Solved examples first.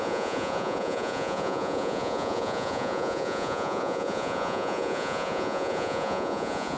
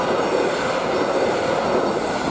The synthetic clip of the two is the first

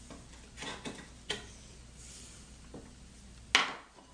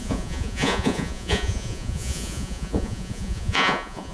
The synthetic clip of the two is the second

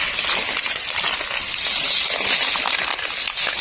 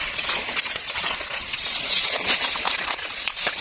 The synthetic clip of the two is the second